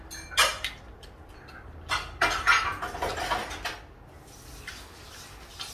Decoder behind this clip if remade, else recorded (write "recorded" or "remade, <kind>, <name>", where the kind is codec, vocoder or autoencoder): recorded